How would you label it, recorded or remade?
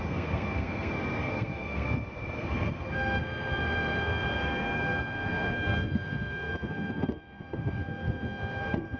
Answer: remade